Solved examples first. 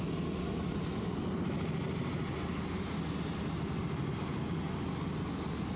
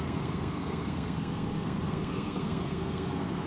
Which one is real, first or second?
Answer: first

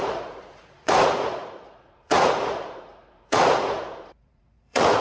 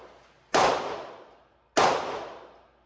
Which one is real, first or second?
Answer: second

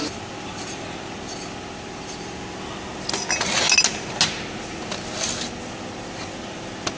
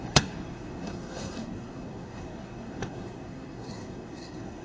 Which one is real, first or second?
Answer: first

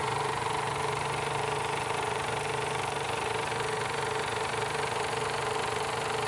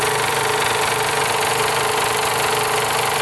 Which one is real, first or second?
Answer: second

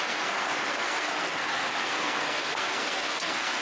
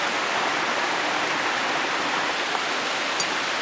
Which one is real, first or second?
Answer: second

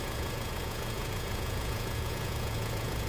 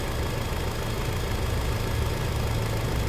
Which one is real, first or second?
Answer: second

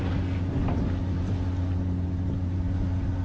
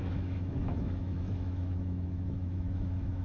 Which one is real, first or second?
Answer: first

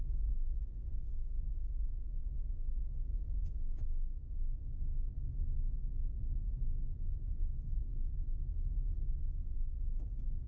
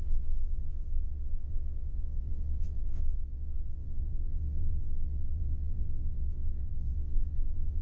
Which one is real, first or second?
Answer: first